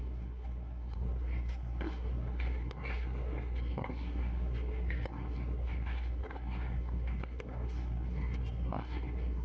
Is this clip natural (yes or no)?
no